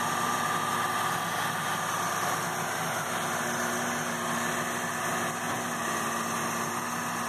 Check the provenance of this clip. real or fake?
real